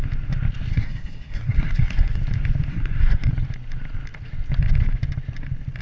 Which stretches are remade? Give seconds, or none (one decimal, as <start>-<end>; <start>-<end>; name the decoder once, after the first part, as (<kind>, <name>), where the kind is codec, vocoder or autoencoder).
0.7-2.2 (codec, SNAC); 2.7-3.3